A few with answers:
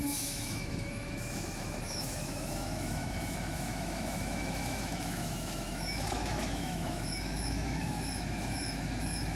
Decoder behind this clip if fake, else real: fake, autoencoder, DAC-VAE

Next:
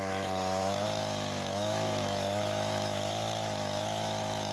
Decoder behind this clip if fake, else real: fake, autoencoder, DAC-VAE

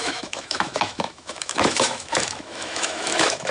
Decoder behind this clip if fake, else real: fake, autoencoder, DAC-VAE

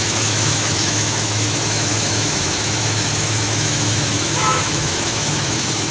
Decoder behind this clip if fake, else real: fake, autoencoder, DAC-VAE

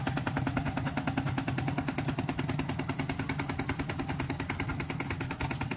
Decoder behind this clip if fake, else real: real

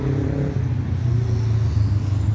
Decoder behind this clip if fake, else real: real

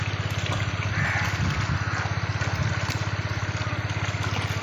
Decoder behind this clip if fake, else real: real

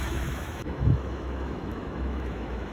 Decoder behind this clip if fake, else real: fake, autoencoder, DAC-VAE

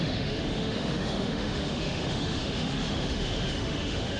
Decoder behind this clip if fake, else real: fake, autoencoder, DAC-VAE